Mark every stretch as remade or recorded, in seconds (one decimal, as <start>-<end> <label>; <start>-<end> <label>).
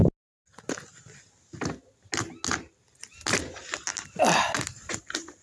0.0-5.4 recorded